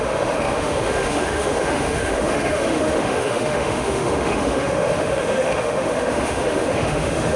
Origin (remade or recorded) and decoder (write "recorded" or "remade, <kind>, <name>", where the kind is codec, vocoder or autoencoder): remade, autoencoder, DAC-VAE